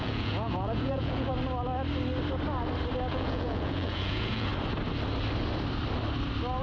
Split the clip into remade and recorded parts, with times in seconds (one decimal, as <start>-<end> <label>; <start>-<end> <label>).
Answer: 0.0-1.3 remade; 1.3-3.1 recorded; 3.1-4.5 remade; 4.5-6.6 recorded